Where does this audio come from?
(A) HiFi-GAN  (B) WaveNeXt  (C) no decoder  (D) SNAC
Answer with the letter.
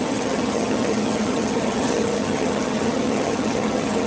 A